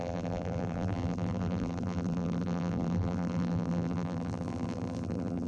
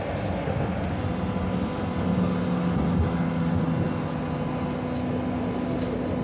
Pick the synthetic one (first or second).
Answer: first